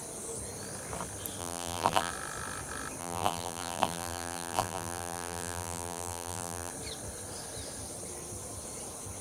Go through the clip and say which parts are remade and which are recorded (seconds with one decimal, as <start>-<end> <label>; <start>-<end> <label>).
0.0-1.4 recorded; 1.4-2.1 remade; 2.1-3.0 recorded; 3.0-6.7 remade; 6.7-9.2 recorded